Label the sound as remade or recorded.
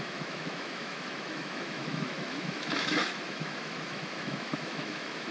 remade